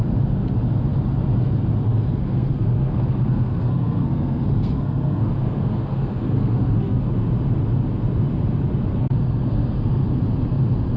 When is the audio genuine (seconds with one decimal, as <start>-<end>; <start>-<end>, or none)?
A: 0.0-1.9; 7.0-8.9; 10.2-11.0